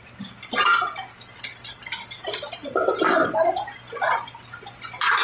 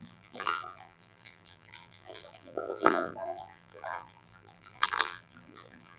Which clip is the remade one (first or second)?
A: second